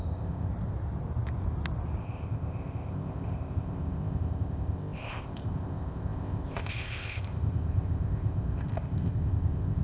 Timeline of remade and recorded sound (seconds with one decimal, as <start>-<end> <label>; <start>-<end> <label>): 0.0-0.5 remade; 0.5-2.0 recorded; 2.0-9.8 remade